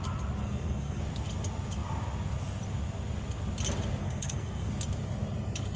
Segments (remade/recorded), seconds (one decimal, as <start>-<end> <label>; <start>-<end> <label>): 0.0-0.4 recorded; 0.4-1.0 remade; 1.0-4.0 recorded; 4.0-4.7 remade; 4.7-5.8 recorded